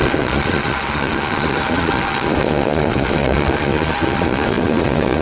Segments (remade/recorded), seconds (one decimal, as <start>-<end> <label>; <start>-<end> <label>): 0.0-5.2 remade